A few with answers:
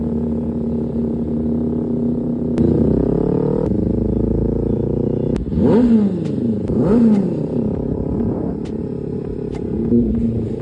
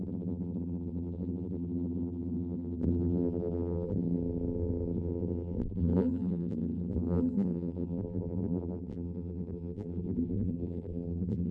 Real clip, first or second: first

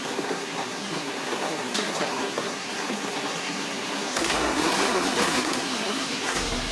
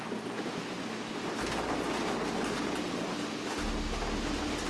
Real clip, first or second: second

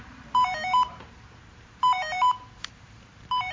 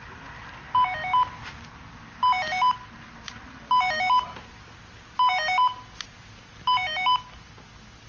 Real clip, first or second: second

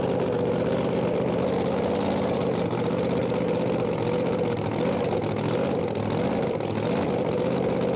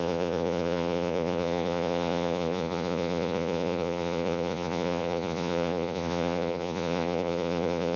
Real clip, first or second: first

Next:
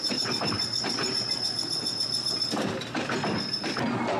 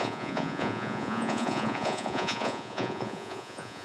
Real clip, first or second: first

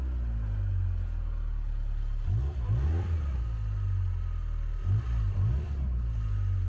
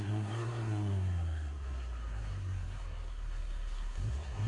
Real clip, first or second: first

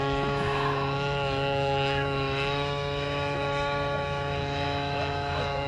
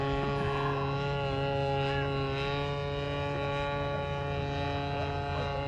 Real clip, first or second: second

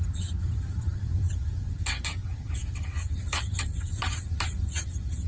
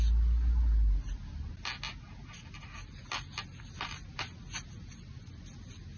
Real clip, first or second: second